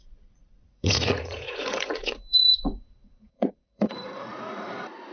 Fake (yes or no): yes